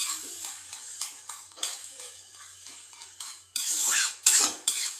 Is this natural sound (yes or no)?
no